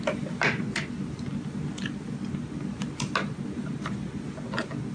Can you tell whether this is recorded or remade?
recorded